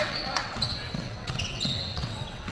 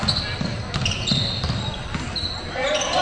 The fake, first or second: first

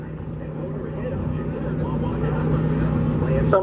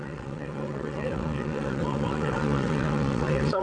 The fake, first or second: second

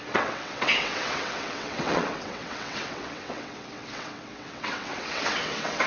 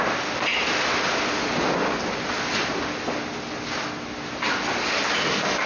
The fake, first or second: first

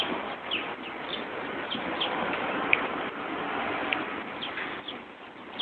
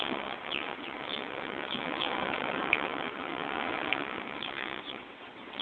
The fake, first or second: second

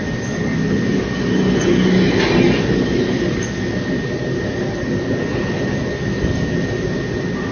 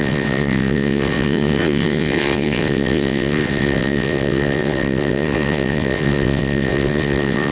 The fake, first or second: second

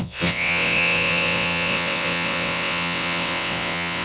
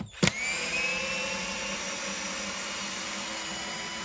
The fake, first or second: first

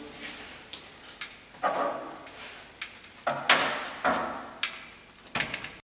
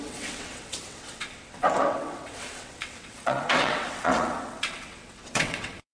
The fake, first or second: second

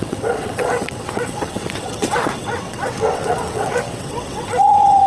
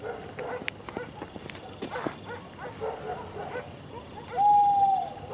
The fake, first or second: first